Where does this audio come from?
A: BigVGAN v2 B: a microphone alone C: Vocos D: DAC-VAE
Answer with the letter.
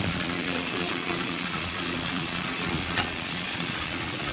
C